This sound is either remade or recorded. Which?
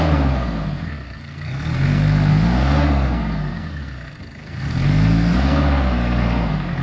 remade